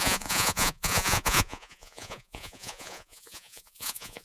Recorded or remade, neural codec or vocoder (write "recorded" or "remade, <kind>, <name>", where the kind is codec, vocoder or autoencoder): remade, vocoder, Vocos